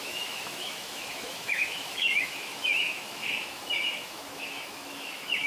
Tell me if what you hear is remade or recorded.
remade